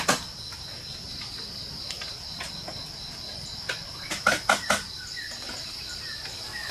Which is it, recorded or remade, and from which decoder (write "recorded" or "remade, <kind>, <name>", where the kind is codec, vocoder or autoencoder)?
recorded